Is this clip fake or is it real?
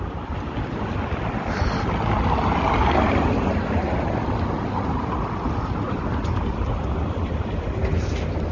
real